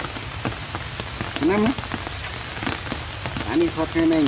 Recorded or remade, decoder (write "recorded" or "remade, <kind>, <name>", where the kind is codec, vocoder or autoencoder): recorded